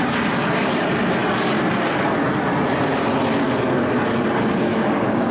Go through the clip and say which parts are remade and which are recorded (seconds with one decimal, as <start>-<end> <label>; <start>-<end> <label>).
0.0-4.7 recorded; 4.7-5.3 remade

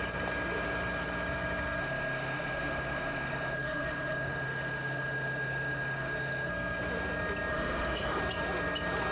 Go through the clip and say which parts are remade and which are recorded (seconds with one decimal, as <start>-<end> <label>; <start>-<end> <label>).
0.0-1.8 recorded; 1.8-6.5 remade; 6.5-7.5 recorded; 7.5-8.2 remade; 8.2-9.1 recorded

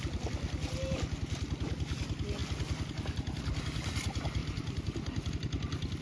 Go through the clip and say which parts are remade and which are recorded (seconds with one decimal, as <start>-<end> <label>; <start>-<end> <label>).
0.0-4.4 recorded; 4.4-5.3 remade; 5.3-6.0 recorded

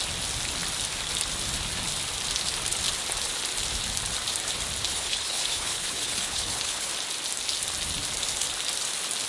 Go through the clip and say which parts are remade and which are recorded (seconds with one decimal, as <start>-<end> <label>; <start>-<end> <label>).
0.0-4.9 recorded; 4.9-6.9 remade; 6.9-9.3 recorded

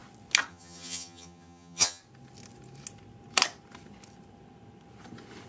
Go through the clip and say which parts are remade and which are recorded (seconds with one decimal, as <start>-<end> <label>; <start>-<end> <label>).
0.0-0.5 recorded; 0.5-2.0 remade; 2.0-5.5 recorded